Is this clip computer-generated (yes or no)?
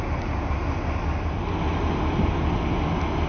no